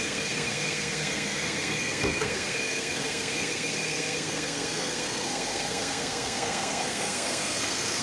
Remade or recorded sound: remade